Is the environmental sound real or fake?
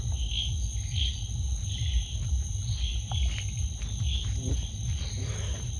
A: real